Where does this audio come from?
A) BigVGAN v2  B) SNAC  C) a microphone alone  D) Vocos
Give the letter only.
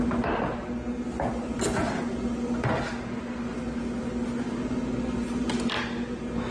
C